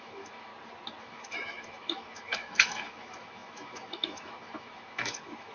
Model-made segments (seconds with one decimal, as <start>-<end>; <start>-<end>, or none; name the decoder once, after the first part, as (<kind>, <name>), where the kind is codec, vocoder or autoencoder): 0.0-0.5 (autoencoder, DAC-VAE); 1.0-5.5